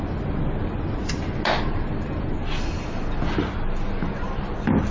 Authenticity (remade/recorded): recorded